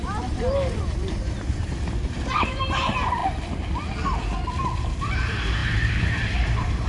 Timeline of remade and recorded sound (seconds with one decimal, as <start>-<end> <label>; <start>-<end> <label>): 0.0-3.2 remade; 3.2-4.8 recorded; 4.8-6.9 remade